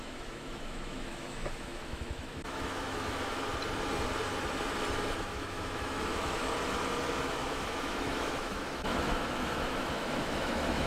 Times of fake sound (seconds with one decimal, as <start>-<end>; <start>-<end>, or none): 0.0-3.5; 5.2-6.4; 7.4-10.9